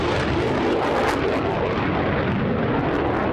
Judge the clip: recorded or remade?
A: recorded